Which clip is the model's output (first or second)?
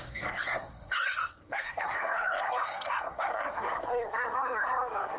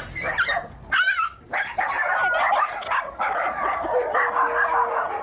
first